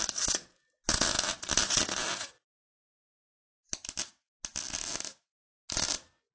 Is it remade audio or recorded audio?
recorded